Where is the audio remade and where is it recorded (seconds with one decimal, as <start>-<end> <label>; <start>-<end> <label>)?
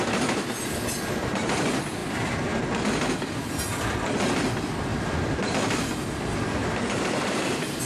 0.0-4.9 recorded; 4.9-5.5 remade; 5.5-6.6 recorded; 6.6-7.8 remade